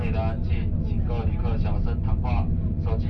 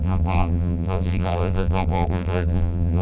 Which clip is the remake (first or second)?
second